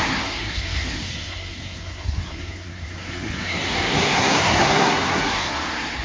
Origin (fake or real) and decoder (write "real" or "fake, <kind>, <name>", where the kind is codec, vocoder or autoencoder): fake, codec, SNAC